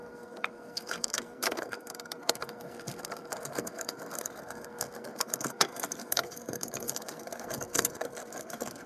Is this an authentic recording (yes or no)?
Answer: no